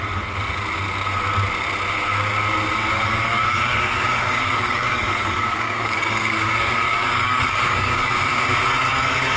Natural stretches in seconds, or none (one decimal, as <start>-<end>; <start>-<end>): 0.0-2.9; 8.1-9.4